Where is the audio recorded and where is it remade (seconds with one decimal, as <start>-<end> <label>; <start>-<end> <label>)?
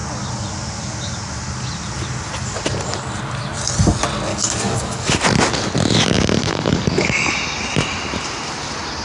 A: 0.0-4.3 recorded; 4.3-5.2 remade; 5.2-6.5 recorded; 6.5-7.3 remade; 7.3-9.0 recorded